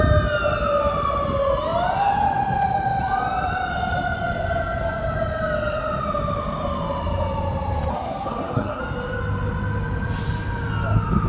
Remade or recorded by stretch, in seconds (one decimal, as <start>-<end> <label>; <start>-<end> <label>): 0.0-7.9 recorded; 7.9-8.8 remade; 8.8-11.3 recorded

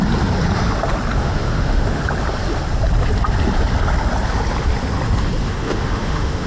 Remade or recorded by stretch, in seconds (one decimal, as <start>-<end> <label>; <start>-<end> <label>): 0.0-1.2 recorded; 1.2-2.0 remade; 2.0-5.4 recorded; 5.4-6.5 remade

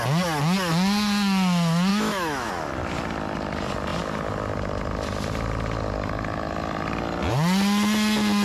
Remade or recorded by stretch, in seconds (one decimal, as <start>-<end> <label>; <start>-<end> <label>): 0.0-1.9 recorded; 1.9-2.5 remade; 2.5-8.4 recorded

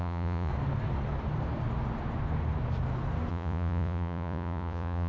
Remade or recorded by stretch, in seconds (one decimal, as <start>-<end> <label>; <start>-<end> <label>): 0.0-0.5 remade; 0.5-3.3 recorded; 3.3-5.1 remade

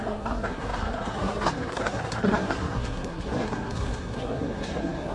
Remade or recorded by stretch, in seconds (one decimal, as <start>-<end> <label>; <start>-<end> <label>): 0.0-5.1 remade

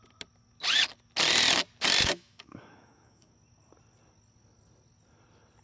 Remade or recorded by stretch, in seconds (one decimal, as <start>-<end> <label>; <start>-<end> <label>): 0.0-2.0 recorded; 2.0-3.3 remade; 3.3-5.6 recorded

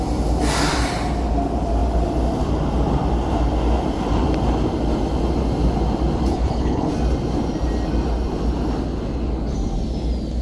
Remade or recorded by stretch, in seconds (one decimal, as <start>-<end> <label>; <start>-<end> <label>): 0.0-6.3 recorded; 6.3-6.9 remade; 6.9-10.4 recorded